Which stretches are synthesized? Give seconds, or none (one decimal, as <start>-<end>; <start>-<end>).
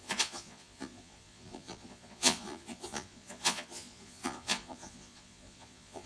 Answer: 0.0-6.1